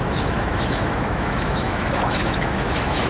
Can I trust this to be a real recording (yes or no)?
no